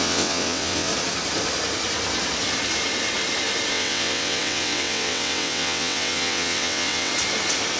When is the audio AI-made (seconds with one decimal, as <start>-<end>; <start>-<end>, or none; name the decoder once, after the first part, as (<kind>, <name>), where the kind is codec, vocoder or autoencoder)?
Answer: 0.0-0.9 (vocoder, WaveNeXt); 3.7-7.1